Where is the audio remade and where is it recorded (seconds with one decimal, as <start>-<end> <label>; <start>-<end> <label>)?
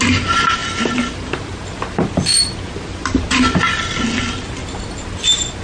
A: 0.0-5.6 recorded